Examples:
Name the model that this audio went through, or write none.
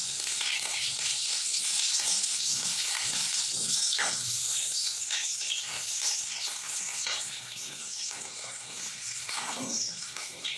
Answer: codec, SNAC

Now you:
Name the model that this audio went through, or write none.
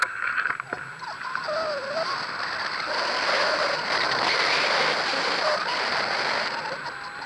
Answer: none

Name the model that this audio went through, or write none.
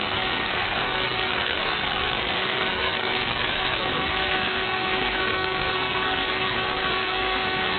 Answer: codec, SNAC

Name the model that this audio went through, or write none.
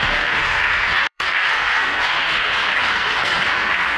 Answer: codec, SNAC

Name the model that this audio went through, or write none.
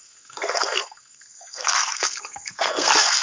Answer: codec, SNAC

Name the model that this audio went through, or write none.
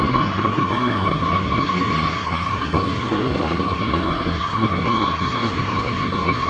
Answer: codec, SNAC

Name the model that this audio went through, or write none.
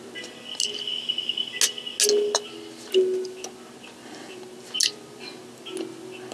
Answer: none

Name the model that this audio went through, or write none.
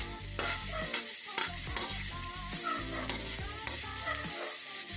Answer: none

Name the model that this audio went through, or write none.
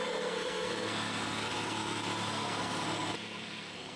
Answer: codec, SNAC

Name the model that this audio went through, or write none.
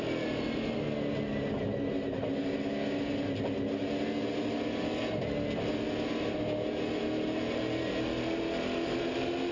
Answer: none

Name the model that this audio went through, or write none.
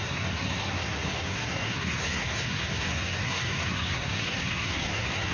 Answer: codec, SNAC